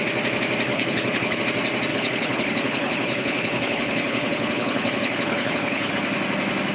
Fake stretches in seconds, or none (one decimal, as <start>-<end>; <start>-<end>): 0.7-1.4; 1.9-5.9